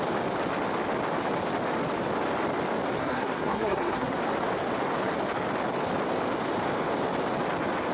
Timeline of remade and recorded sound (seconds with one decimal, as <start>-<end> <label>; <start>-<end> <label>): 0.0-3.0 recorded; 3.0-4.2 remade; 4.2-7.9 recorded